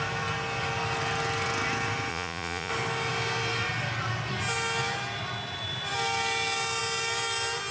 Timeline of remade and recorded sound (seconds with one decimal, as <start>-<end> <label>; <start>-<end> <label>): 0.0-2.1 recorded; 2.1-2.7 remade; 2.7-7.7 recorded